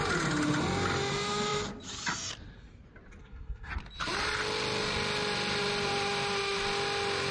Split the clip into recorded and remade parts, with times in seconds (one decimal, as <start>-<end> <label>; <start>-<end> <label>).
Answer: 0.0-3.2 recorded; 3.2-3.7 remade; 3.7-7.3 recorded